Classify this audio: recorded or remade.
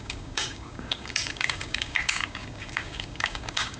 remade